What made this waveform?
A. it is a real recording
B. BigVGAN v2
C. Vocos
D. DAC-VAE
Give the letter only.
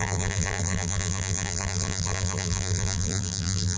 B